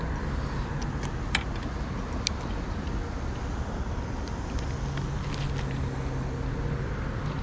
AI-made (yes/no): no